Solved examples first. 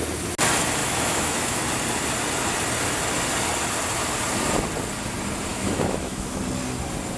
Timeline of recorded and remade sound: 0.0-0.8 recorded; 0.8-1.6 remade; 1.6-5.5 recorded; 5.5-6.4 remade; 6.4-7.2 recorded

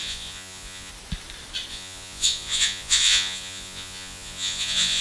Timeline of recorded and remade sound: 0.0-0.9 remade; 0.9-1.7 recorded; 1.7-5.0 remade

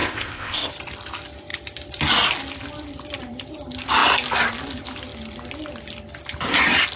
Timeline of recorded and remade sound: 0.0-0.7 remade; 0.7-7.0 recorded

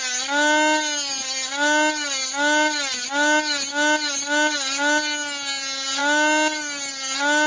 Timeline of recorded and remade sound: 0.0-7.5 recorded